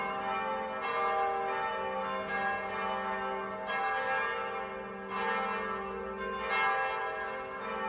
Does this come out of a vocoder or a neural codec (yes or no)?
no